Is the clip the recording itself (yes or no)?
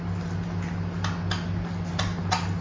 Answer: yes